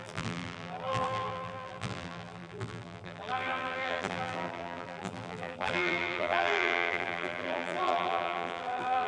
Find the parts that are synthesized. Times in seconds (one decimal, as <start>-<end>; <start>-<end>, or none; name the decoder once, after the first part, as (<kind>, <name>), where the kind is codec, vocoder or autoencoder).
0.0-9.1 (vocoder, BigVGAN v2)

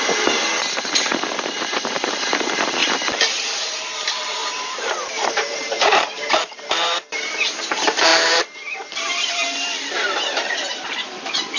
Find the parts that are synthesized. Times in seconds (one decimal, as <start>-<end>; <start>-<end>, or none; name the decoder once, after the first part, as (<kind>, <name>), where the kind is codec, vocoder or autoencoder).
0.0-2.8 (vocoder, BigVGAN v2); 3.3-11.6

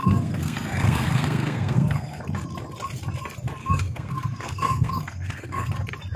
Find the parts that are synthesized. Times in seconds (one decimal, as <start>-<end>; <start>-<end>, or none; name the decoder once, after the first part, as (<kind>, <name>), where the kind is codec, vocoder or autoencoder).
0.0-2.2 (codec, SNAC); 3.6-5.7

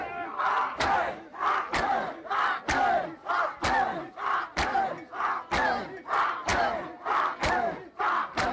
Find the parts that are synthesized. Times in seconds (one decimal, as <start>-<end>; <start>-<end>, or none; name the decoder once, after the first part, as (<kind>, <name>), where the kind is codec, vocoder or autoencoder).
none

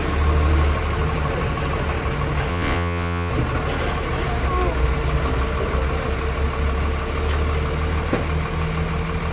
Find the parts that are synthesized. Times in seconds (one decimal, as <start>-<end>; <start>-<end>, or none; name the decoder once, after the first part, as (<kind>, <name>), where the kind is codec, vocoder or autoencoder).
2.5-3.3 (vocoder, WaveNeXt)